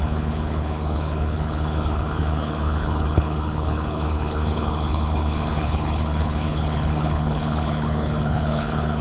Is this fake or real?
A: fake